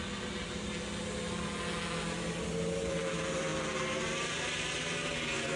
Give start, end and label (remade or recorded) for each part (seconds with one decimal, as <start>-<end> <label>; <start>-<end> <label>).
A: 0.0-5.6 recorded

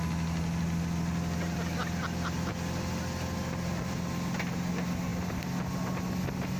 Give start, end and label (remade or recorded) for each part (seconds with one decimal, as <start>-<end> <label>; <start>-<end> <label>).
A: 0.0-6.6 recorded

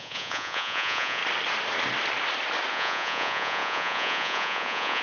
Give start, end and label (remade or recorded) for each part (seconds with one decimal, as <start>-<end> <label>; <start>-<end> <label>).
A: 0.0-1.2 remade; 1.2-2.7 recorded; 2.7-5.0 remade

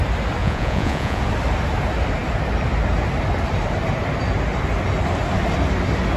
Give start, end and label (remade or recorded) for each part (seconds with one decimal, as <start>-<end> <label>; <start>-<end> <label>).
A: 0.0-0.4 recorded; 0.4-1.2 remade; 1.2-6.2 recorded

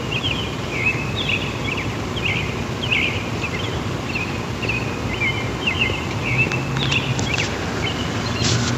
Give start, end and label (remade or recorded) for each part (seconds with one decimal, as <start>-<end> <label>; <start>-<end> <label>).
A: 0.0-8.8 recorded